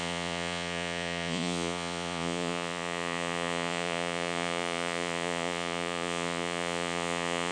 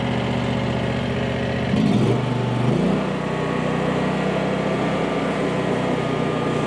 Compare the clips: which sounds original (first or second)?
second